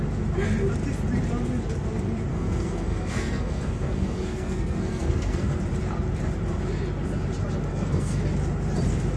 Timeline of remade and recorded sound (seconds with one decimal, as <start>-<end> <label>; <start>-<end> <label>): 0.0-2.3 recorded; 2.3-5.6 remade; 5.6-7.7 recorded; 7.7-8.2 remade; 8.2-9.2 recorded